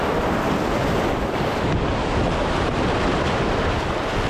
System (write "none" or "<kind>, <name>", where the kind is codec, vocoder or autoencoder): none